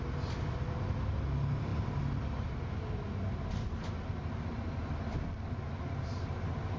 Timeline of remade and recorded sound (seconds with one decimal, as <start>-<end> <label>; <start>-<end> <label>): 0.0-6.8 recorded